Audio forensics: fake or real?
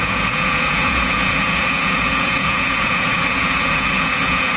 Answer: fake